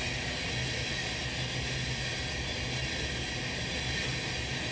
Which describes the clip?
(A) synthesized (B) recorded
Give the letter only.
B